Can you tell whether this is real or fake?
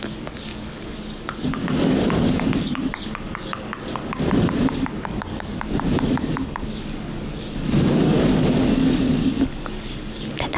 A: fake